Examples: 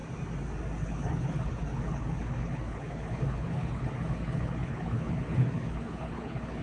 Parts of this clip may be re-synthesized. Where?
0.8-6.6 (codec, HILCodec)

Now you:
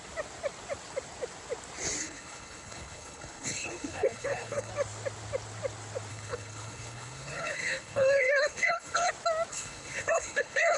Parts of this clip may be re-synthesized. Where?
2.0-4.7 (codec, HILCodec); 6.1-9.1; 9.5-10.8